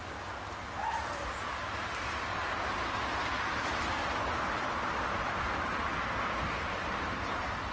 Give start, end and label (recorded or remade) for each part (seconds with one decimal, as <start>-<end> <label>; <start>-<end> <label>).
0.0-4.0 recorded; 4.0-4.9 remade; 4.9-7.7 recorded